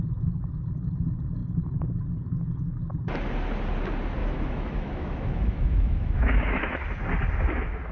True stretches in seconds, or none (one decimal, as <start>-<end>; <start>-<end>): 0.0-4.2; 6.7-7.9